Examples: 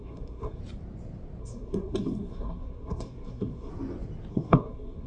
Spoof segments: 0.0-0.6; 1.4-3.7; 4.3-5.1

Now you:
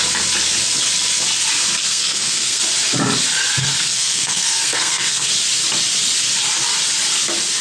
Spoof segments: 1.8-2.6; 3.6-5.3

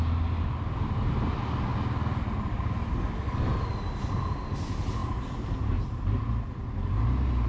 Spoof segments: none

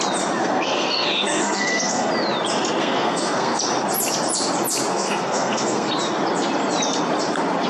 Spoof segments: 0.4-2.1; 2.8-3.6; 4.9-5.9

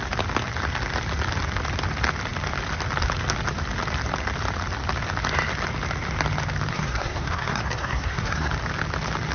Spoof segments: 6.7-8.5